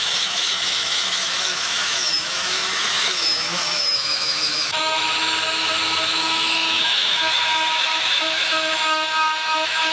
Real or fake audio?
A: fake